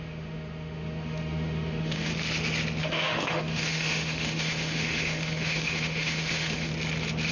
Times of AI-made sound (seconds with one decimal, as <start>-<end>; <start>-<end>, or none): 0.0-2.1; 2.8-6.7